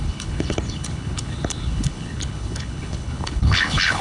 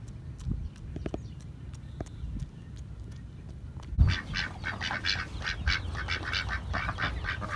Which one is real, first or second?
second